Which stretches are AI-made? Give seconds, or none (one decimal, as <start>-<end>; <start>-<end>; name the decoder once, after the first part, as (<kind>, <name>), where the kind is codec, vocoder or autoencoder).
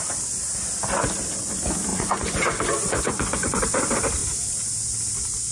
1.9-3.6 (vocoder, Vocos)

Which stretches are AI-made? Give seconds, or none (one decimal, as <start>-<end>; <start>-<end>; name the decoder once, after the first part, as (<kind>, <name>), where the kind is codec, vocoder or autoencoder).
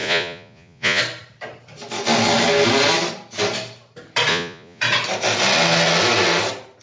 0.0-1.0 (vocoder, Vocos); 4.3-4.8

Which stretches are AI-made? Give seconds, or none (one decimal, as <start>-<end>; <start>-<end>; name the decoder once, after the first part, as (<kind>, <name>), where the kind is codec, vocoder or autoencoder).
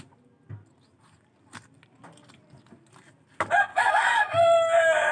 3.7-4.2 (codec, DAC)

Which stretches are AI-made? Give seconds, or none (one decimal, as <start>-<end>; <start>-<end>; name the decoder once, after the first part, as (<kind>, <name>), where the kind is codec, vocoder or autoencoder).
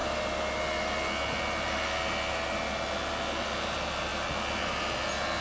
none